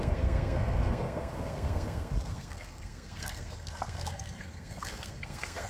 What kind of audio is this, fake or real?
fake